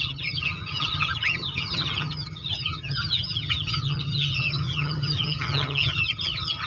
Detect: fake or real fake